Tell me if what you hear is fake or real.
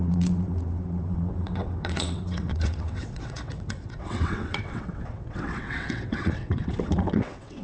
fake